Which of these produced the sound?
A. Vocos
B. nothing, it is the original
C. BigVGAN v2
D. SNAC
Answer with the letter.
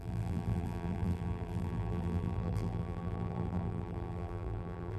C